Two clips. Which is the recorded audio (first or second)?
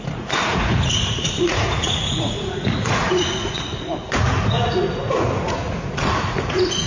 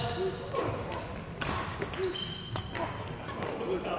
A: second